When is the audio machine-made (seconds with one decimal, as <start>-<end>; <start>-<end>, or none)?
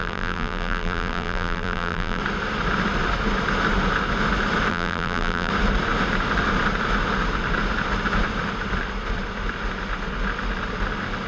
0.0-2.2; 4.7-5.5